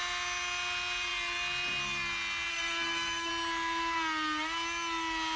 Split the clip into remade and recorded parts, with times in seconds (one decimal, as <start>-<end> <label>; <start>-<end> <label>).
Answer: 0.0-2.5 recorded; 2.5-3.3 remade; 3.3-5.4 recorded